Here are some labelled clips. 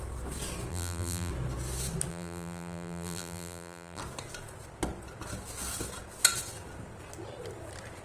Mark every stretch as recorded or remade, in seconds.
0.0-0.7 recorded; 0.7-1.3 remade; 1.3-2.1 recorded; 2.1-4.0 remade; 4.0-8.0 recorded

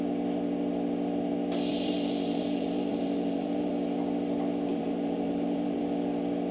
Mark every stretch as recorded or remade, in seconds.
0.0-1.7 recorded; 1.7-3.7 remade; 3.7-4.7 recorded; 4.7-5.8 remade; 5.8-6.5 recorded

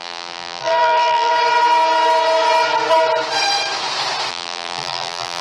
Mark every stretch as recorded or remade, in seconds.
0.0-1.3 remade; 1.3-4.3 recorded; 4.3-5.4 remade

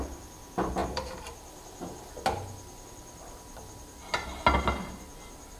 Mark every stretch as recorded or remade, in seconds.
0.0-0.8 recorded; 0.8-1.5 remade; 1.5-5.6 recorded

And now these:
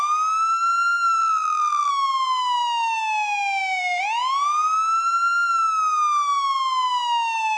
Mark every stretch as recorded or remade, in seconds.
0.0-1.2 recorded; 1.2-1.9 remade; 1.9-7.6 recorded